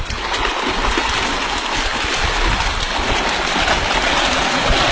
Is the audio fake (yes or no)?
no